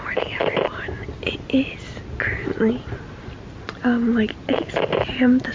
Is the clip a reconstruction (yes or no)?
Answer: no